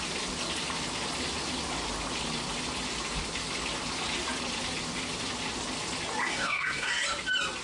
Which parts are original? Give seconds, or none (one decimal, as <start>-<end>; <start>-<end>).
0.0-6.3; 6.9-7.6